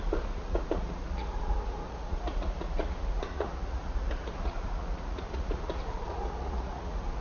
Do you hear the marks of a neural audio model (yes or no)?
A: yes